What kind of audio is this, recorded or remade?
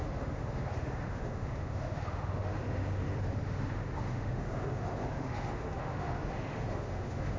remade